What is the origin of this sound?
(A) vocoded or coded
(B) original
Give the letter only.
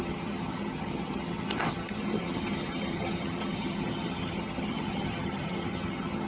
A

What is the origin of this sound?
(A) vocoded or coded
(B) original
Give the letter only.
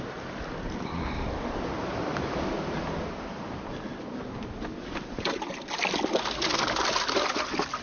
B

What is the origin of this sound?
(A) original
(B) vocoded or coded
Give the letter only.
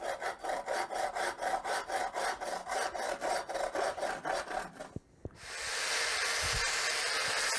A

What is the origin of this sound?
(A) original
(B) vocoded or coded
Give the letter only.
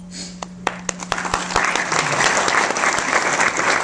A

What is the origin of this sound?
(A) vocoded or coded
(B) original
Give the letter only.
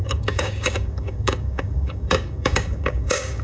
A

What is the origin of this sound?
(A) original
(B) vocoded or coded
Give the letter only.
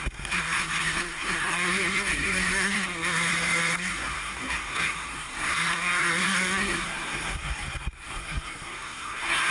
B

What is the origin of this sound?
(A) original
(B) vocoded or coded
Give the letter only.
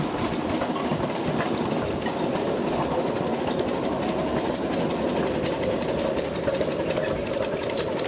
A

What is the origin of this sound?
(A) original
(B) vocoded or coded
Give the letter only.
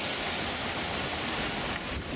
A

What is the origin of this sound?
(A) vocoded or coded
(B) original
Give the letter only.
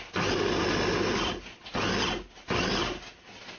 B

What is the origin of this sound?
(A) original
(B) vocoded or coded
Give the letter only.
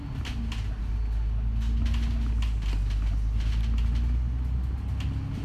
A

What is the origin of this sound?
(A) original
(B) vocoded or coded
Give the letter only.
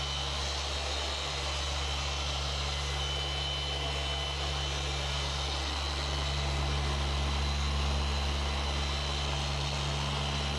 A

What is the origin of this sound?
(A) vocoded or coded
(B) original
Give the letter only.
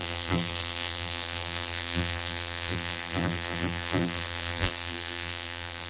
A